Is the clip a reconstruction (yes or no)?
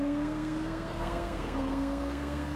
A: yes